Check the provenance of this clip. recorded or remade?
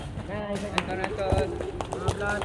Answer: recorded